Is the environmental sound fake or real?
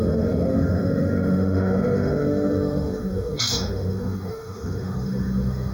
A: fake